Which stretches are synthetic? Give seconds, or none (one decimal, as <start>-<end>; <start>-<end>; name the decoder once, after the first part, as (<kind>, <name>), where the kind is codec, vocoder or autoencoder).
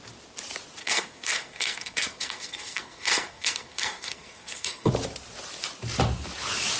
0.8-4.9 (codec, SNAC)